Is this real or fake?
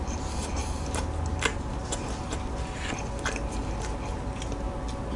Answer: real